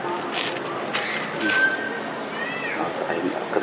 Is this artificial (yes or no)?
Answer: no